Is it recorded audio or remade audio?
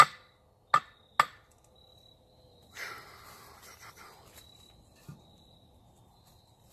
recorded